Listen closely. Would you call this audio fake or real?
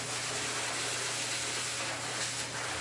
real